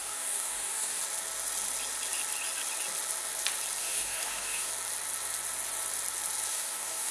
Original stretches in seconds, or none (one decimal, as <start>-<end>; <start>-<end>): 1.0-3.8; 4.7-6.5

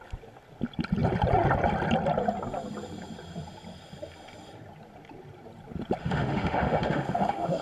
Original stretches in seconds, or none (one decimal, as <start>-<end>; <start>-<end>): 0.0-6.0

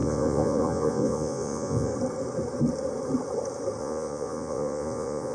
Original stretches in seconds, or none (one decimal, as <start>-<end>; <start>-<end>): 1.9-3.8

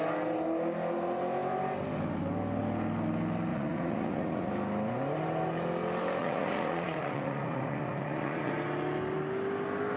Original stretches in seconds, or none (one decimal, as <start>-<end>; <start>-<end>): 0.0-3.5; 4.5-6.2; 8.5-10.0

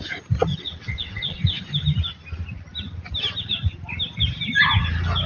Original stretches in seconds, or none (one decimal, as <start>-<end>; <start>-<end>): 0.0-0.5; 1.6-5.3

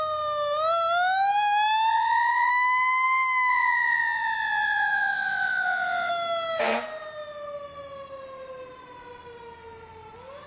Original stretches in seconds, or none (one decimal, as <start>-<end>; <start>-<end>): 0.0-1.9; 2.5-3.5; 6.1-10.5

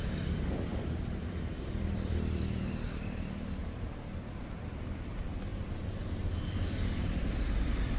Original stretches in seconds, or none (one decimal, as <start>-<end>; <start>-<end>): 5.5-6.4

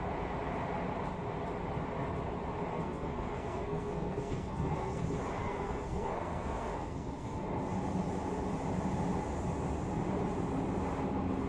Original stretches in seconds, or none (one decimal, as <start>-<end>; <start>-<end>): 0.0-2.7; 5.0-5.4; 7.4-11.5